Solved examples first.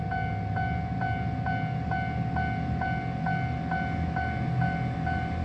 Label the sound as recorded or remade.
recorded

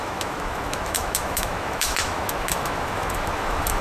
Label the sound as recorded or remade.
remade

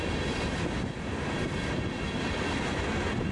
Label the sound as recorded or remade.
recorded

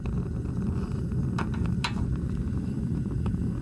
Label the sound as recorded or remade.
recorded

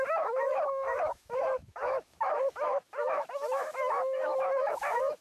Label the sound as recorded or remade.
remade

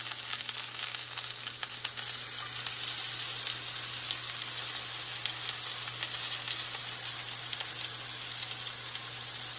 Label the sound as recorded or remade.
recorded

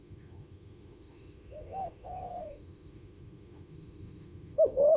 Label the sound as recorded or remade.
remade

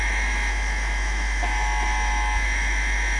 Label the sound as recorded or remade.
remade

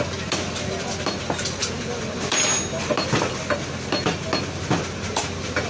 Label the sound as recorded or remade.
recorded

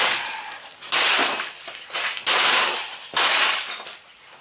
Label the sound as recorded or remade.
recorded